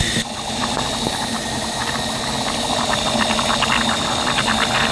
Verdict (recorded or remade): recorded